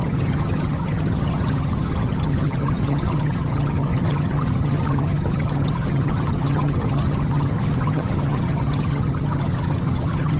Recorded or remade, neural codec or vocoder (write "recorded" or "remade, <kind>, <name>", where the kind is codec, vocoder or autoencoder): remade, vocoder, HiFi-GAN